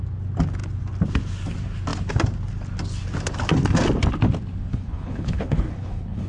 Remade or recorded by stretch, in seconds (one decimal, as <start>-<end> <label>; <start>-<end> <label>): 0.0-4.7 recorded; 4.7-6.3 remade